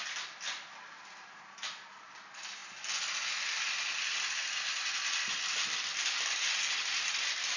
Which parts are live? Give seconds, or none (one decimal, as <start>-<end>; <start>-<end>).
0.0-7.6